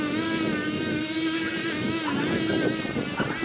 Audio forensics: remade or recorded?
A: recorded